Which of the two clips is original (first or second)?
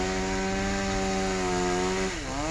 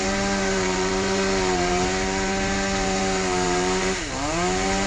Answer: first